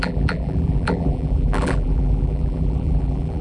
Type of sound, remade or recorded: remade